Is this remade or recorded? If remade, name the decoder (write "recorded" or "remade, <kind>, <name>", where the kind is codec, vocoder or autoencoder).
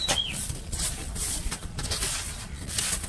remade, vocoder, Vocos